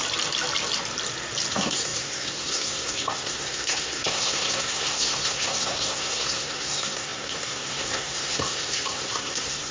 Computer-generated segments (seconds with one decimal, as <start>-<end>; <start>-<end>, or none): 1.5-9.7

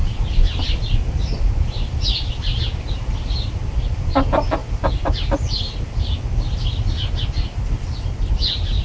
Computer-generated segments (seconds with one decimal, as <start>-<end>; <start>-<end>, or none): none